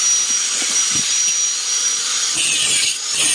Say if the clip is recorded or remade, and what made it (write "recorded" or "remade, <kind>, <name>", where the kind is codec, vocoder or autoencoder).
recorded